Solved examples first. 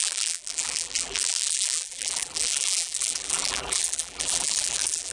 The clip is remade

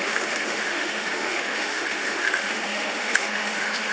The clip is remade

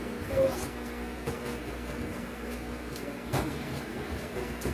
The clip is remade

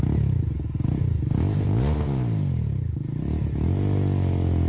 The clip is recorded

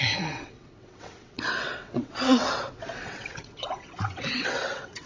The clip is remade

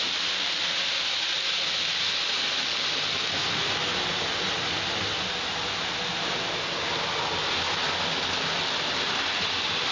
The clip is recorded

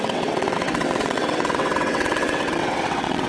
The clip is remade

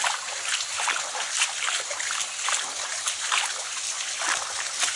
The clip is recorded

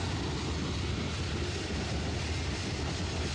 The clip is recorded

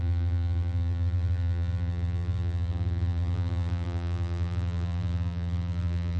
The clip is remade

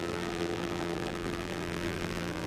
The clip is remade